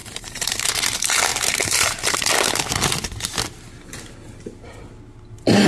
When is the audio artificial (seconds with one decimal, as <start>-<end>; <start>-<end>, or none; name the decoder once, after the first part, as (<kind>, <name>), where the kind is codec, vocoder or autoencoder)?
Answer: 0.0-0.7 (vocoder, BigVGAN v2); 1.3-2.3